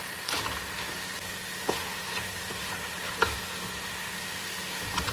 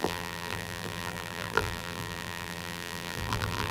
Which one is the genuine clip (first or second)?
first